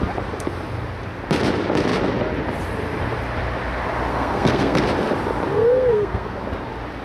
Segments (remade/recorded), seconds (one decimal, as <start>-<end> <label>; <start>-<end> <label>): 0.0-4.1 recorded; 4.1-4.8 remade; 4.8-5.5 recorded; 5.5-6.4 remade; 6.4-7.0 recorded